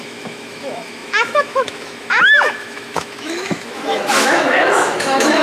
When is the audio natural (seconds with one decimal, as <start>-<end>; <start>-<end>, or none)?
none